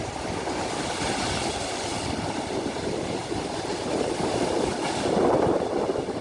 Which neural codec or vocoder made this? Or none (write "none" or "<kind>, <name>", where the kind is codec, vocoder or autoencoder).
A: none